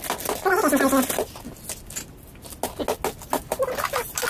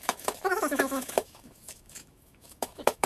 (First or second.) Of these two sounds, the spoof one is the second